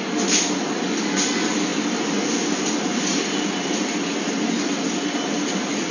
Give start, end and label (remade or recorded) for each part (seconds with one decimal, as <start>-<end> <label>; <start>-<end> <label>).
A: 0.0-1.7 recorded; 1.7-2.3 remade; 2.3-3.1 recorded; 3.1-5.0 remade; 5.0-5.9 recorded